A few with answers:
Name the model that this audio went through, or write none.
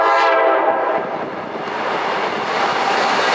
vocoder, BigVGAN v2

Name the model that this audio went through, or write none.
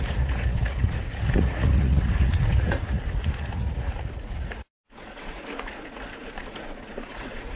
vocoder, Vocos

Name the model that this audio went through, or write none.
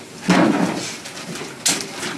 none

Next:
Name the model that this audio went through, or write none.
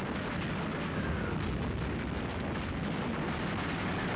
none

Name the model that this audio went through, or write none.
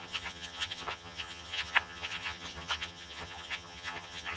vocoder, HiFi-GAN